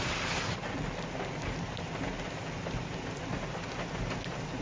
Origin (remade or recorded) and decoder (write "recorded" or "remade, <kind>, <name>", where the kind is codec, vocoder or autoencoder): recorded